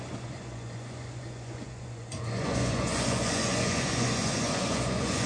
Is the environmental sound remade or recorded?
remade